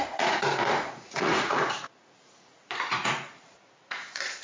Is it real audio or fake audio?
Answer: fake